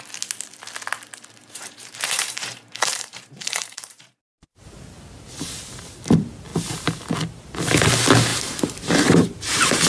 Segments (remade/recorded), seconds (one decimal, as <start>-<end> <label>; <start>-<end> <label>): 0.0-1.4 recorded; 1.4-4.6 remade; 4.6-8.3 recorded; 8.3-9.9 remade